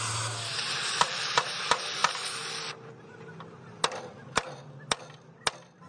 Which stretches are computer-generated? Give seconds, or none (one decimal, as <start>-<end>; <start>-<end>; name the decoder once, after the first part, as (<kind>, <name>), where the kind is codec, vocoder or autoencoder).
0.5-1.5 (vocoder, BigVGAN v2)